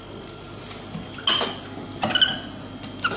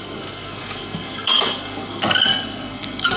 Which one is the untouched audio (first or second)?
first